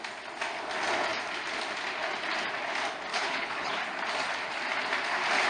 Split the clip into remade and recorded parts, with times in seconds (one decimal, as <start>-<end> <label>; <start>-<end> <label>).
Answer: 0.0-3.1 recorded; 3.1-3.8 remade; 3.8-5.5 recorded